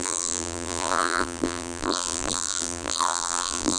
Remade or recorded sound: remade